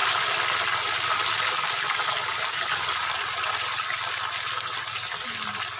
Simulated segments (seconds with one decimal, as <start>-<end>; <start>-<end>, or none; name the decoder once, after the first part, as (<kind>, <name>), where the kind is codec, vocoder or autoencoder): none